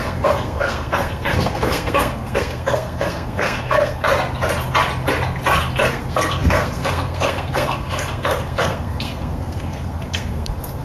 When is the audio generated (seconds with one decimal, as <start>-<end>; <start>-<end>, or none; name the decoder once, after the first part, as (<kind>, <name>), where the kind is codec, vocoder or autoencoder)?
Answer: 0.0-4.1 (codec, SNAC); 5.9-10.8